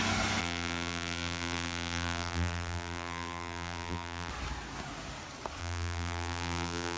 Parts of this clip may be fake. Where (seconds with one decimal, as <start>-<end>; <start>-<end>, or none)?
0.4-4.3; 5.6-7.0

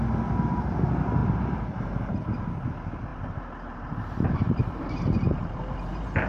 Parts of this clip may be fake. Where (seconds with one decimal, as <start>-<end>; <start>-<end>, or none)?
1.2-2.5; 3.1-5.8